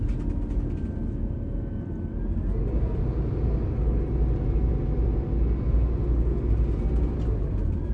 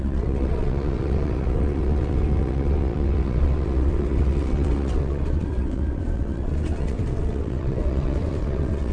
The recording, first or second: first